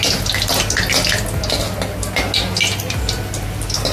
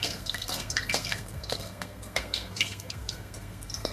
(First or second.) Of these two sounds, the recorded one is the first